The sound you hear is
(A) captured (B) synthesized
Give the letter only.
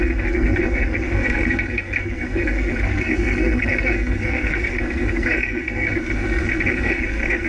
B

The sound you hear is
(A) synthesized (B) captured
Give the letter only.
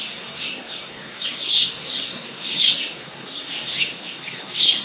A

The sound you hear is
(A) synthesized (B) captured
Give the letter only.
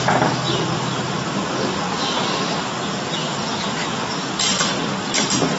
B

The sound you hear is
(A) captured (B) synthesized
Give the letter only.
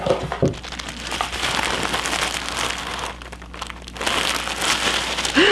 A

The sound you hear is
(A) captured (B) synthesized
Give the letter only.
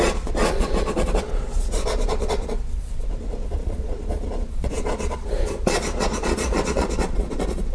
B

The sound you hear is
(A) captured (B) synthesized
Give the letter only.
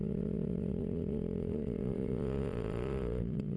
B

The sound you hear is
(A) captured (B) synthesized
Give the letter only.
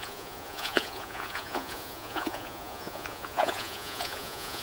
B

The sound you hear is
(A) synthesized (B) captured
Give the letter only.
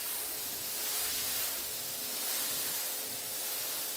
B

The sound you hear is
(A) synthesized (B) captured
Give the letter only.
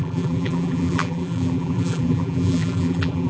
A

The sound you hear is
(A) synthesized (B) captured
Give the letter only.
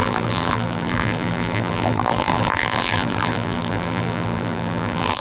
A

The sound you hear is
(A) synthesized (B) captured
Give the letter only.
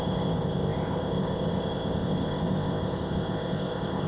A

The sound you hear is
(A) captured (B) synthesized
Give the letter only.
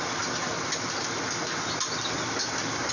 A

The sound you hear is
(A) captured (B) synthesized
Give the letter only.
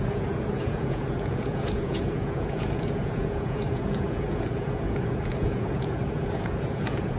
B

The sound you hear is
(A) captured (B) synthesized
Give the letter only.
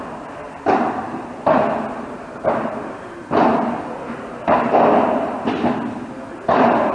A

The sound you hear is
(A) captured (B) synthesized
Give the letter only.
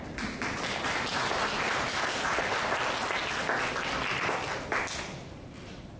A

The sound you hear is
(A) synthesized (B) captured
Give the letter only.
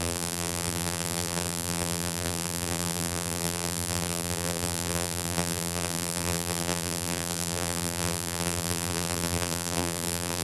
A